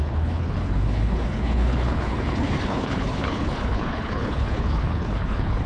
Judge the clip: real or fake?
fake